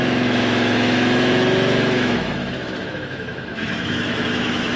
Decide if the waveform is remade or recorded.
remade